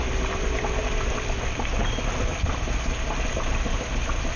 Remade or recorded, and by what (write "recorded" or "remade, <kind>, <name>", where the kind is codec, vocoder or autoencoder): recorded